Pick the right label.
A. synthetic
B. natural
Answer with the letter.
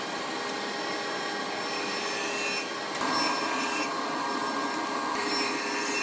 B